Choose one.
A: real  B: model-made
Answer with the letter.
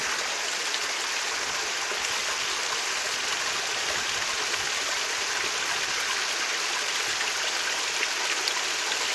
A